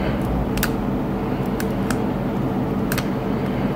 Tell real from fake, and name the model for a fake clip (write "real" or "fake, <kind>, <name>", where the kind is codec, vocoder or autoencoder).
real